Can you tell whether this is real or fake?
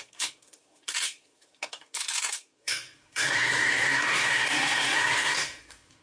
fake